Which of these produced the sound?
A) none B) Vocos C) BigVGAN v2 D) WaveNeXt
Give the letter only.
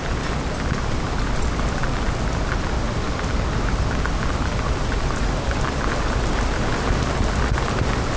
A